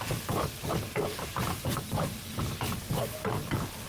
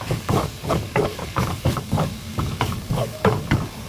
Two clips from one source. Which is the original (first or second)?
first